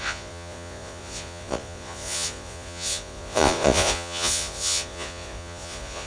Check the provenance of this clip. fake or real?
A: fake